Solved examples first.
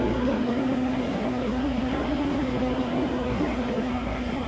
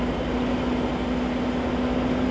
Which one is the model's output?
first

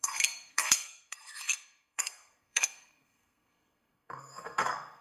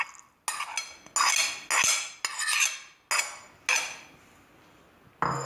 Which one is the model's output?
first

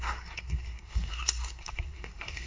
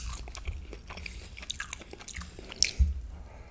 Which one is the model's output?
first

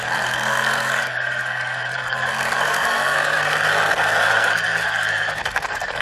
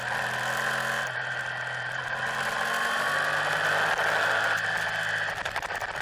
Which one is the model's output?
first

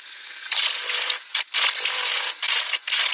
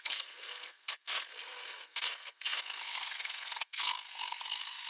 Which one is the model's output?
second